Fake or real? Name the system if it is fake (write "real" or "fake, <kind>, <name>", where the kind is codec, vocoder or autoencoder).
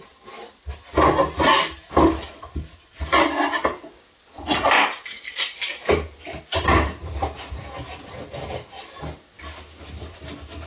real